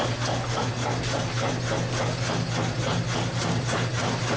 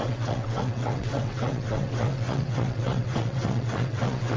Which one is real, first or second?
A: first